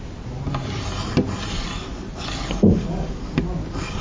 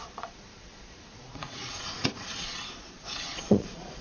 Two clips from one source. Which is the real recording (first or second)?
first